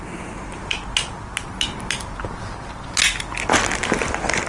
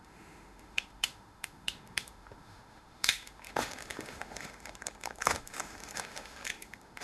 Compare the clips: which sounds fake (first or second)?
second